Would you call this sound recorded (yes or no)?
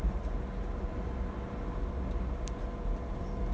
yes